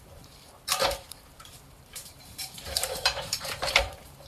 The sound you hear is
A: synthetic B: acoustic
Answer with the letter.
A